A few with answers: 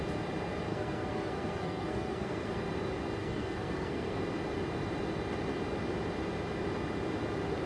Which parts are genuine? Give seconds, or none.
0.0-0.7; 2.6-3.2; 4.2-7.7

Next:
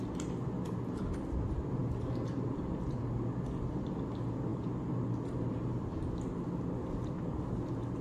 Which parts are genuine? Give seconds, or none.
0.0-8.0

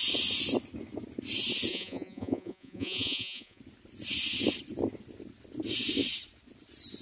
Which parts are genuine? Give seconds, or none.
0.0-1.7; 3.6-7.0

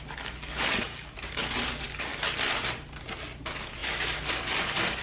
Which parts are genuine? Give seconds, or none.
2.1-3.4

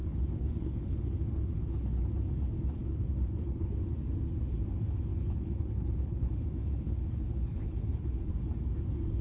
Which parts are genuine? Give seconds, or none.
2.0-2.8; 3.7-5.1; 8.3-9.2

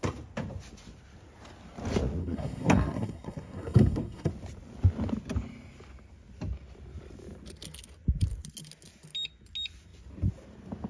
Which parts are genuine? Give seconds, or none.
0.0-2.2; 4.3-10.9